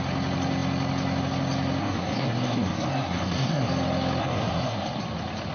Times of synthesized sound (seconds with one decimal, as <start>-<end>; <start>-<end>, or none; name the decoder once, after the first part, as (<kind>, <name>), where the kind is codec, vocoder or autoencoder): 1.8-3.7 (codec, SNAC); 4.2-5.0